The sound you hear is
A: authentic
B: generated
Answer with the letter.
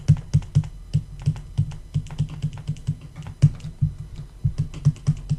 A